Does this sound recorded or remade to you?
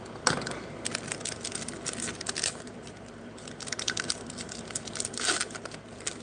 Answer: recorded